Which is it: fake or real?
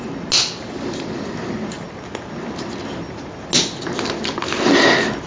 real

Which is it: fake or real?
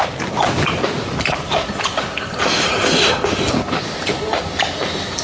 real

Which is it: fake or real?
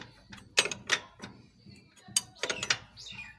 real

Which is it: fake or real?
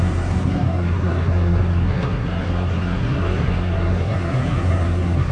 fake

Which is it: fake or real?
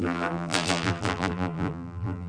fake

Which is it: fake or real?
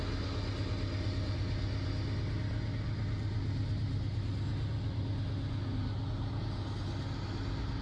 real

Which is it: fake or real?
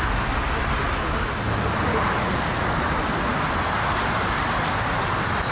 real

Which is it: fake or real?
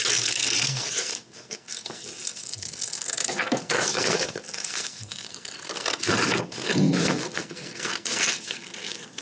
fake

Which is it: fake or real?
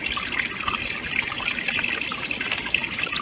real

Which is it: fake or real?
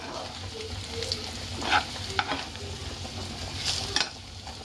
real